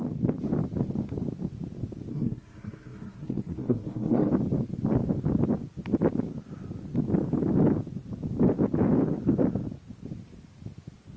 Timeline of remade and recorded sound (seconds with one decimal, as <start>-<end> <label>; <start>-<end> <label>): 0.0-2.1 recorded; 2.1-4.3 remade; 4.3-11.2 recorded